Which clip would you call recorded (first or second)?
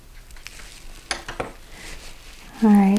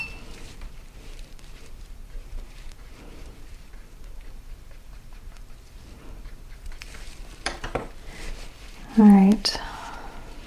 first